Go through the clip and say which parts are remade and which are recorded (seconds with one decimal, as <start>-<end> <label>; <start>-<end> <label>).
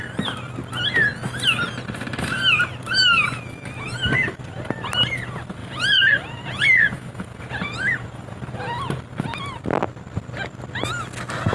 0.0-5.6 recorded; 5.6-8.4 remade; 8.4-11.5 recorded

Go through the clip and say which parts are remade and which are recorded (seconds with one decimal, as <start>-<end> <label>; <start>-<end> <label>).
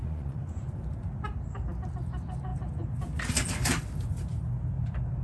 0.0-0.7 remade; 0.7-5.2 recorded